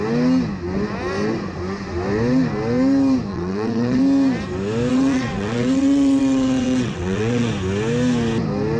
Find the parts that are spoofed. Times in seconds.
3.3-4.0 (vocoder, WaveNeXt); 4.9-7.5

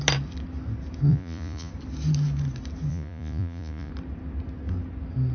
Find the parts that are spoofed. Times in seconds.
1.1-1.7 (vocoder, Vocos); 2.9-3.9

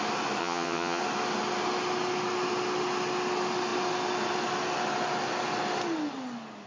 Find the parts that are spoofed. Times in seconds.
0.4-1.0 (vocoder, HiFi-GAN)

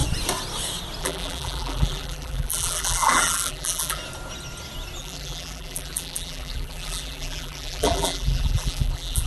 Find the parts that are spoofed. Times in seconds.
1.0-4.0 (vocoder, BigVGAN v2); 5.0-9.3

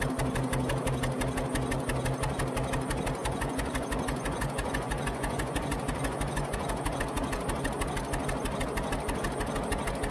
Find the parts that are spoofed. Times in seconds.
3.2-7.0 (vocoder, Vocos)

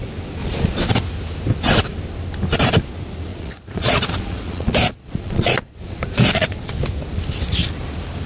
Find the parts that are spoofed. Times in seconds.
0.4-0.9 (vocoder, Vocos); 3.3-6.7

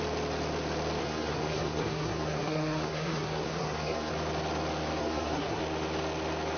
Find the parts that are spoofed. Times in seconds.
1.0-4.1 (codec, SNAC); 5.0-5.6